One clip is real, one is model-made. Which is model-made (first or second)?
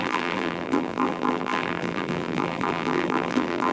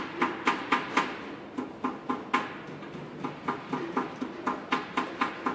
first